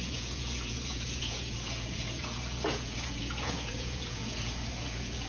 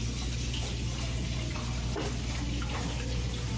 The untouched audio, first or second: second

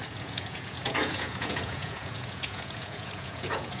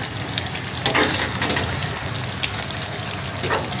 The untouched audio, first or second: second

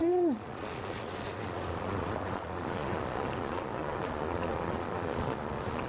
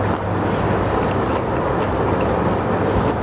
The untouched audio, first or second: second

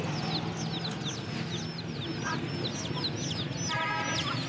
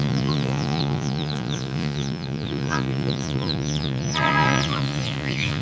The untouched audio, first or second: first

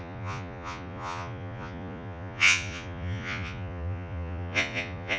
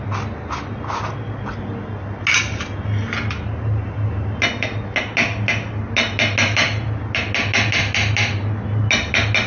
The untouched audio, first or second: second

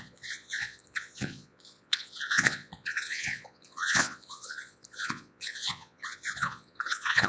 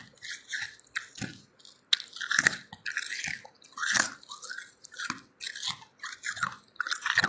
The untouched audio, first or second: second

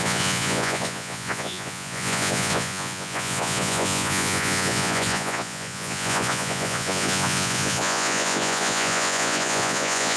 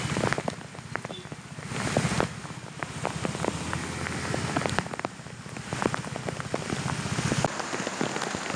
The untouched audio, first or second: second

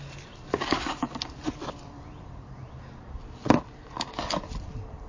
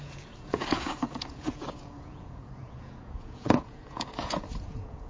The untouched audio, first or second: first